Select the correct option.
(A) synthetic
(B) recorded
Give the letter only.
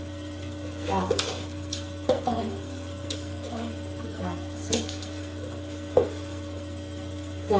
A